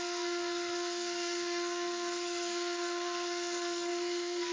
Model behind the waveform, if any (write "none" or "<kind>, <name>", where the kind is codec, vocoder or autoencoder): codec, SNAC